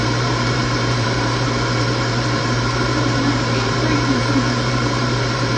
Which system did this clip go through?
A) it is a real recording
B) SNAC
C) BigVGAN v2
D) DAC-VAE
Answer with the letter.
C